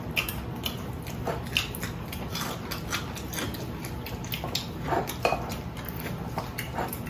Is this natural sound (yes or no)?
yes